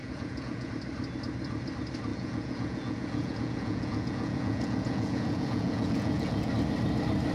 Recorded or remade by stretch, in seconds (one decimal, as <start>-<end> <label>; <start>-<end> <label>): 0.0-0.7 remade; 0.7-2.1 recorded; 2.1-6.5 remade; 6.5-7.3 recorded